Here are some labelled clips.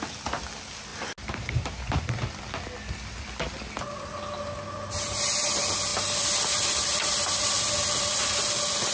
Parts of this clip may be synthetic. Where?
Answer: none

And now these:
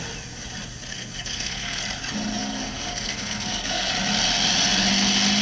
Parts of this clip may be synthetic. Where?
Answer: 0.9-1.8 (codec, SNAC); 2.4-3.9

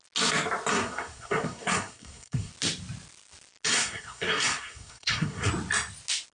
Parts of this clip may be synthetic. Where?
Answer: 0.7-2.5 (codec, SNAC); 3.7-5.5

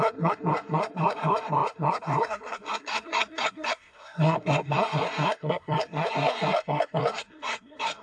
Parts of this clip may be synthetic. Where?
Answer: 0.0-8.0 (codec, SNAC)

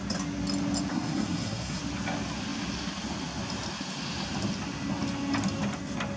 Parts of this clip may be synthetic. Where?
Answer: 0.9-1.8 (codec, SNAC)

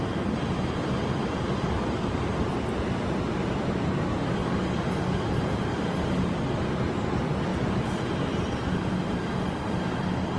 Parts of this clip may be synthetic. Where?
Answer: none